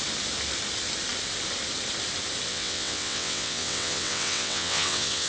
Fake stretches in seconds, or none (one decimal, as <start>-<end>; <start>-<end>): 2.5-5.3